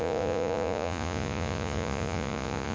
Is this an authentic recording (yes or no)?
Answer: no